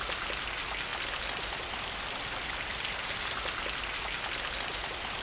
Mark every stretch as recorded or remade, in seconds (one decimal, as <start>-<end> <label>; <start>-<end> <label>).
0.0-5.2 recorded